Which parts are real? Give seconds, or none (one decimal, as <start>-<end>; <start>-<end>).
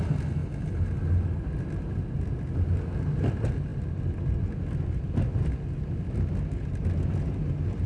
0.0-7.9